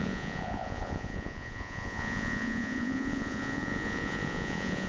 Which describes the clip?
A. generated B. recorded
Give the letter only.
A